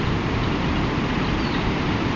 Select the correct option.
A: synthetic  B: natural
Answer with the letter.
B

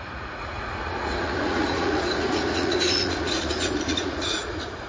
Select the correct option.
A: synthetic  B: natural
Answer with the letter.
A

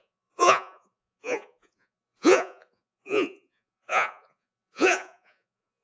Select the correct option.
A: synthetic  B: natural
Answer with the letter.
A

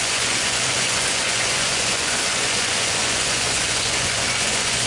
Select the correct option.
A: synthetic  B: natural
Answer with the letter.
A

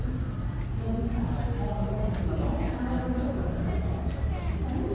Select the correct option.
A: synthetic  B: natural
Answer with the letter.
B